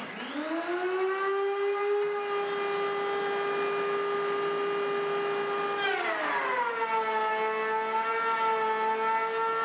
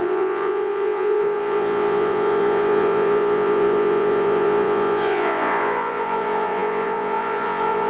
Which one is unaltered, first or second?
first